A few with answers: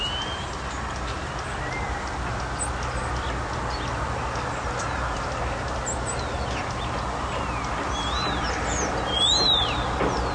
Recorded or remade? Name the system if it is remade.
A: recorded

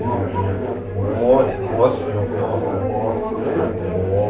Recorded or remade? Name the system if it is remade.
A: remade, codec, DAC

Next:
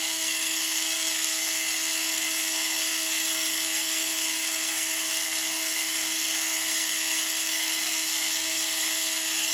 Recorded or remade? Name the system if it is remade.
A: remade, codec, SNAC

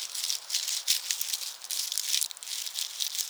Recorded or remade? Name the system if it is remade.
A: recorded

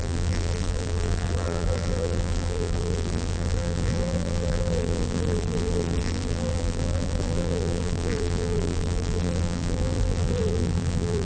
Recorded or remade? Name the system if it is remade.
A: remade, vocoder, BigVGAN v2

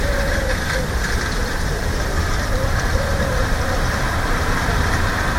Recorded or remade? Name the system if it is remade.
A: remade, vocoder, BigVGAN v2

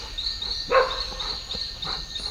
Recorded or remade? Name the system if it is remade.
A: recorded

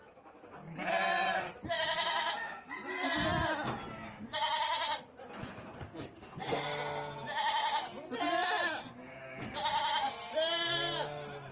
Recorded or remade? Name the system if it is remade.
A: recorded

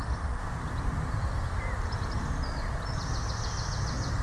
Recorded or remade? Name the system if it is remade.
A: recorded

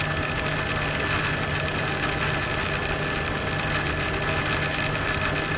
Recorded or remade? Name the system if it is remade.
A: recorded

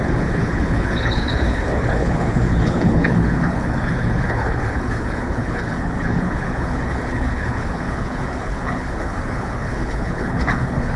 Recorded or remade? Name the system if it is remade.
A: remade, codec, HILCodec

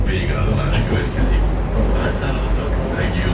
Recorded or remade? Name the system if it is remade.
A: recorded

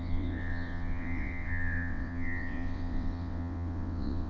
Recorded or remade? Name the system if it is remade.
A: remade, vocoder, WaveNeXt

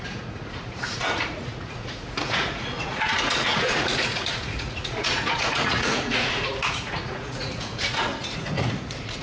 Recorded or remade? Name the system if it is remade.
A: remade, vocoder, Vocos